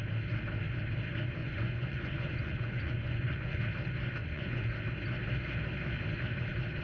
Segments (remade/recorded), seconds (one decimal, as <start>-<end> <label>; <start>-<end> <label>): 0.0-1.4 recorded; 1.4-3.6 remade; 3.6-4.2 recorded; 4.2-4.7 remade; 4.7-6.8 recorded